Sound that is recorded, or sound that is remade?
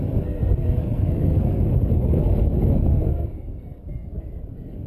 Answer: remade